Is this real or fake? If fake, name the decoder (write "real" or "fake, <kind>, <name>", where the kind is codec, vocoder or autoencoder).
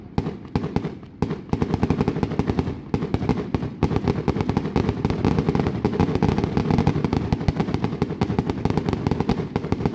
real